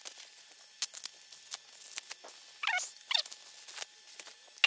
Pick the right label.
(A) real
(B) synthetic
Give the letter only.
A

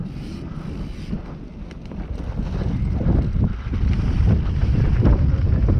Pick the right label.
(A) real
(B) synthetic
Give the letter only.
A